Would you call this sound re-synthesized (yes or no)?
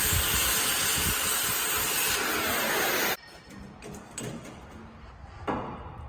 no